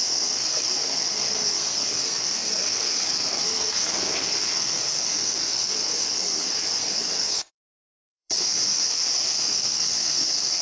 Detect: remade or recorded remade